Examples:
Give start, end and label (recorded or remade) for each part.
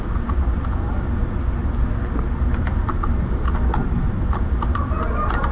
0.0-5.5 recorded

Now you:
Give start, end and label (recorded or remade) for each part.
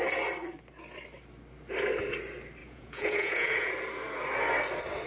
0.0-2.6 recorded; 2.6-3.7 remade; 3.7-5.1 recorded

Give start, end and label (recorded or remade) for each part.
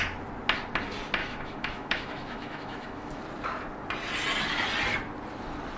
0.0-1.2 recorded; 1.2-3.2 remade; 3.2-5.8 recorded